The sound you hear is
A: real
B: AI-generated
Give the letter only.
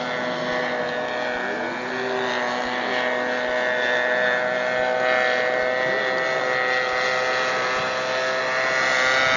A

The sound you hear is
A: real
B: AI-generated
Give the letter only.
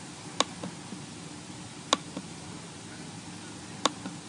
A